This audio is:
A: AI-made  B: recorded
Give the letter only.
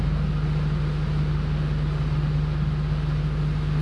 B